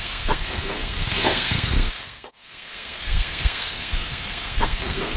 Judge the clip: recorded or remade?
remade